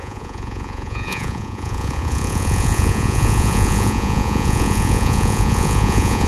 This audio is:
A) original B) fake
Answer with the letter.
B